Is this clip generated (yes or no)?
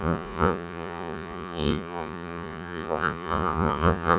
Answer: yes